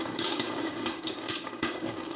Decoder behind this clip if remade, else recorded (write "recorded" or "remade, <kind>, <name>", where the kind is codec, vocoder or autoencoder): remade, codec, DAC